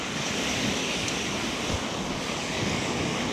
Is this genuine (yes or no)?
no